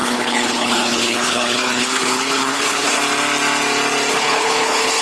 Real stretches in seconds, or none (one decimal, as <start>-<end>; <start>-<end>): 3.0-4.1

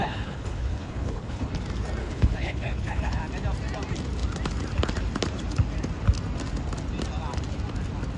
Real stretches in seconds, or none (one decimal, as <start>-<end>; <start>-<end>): 1.5-2.0; 3.2-8.2